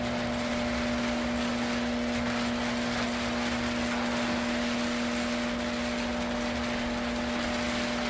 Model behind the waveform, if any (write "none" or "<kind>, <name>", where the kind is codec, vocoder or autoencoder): none